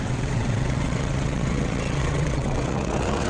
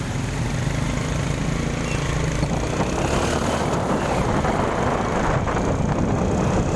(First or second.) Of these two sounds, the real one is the second